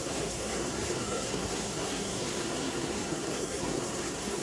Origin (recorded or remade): remade